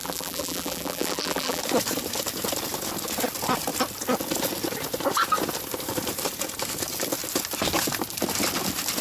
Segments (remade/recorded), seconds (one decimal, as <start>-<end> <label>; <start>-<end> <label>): 0.0-1.6 remade; 1.6-9.0 recorded